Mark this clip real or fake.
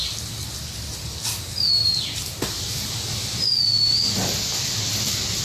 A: real